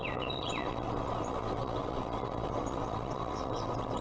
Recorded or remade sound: remade